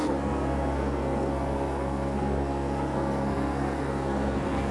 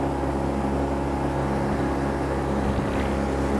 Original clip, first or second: second